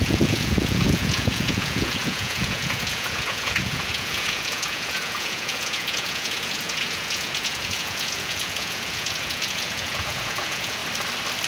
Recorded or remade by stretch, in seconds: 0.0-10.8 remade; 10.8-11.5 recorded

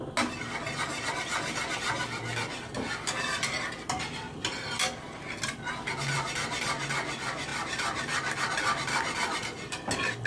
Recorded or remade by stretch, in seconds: 0.0-10.3 recorded

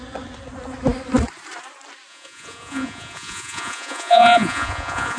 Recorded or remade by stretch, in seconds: 0.0-2.1 recorded; 2.1-5.2 remade

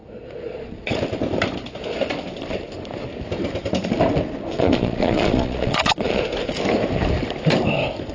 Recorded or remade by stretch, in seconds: 0.0-1.0 remade; 1.0-4.5 recorded; 4.5-6.2 remade; 6.2-8.1 recorded

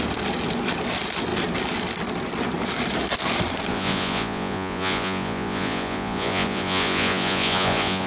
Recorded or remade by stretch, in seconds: 0.0-3.7 recorded; 3.7-8.1 remade

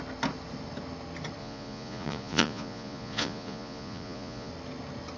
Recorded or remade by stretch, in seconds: 0.0-1.4 recorded; 1.4-4.5 remade; 4.5-5.2 recorded

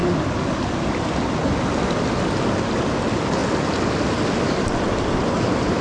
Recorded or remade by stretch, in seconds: 0.0-5.8 recorded